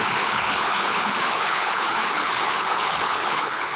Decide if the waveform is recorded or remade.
remade